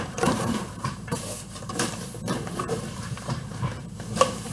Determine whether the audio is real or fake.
fake